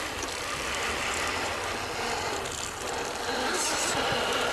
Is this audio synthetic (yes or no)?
no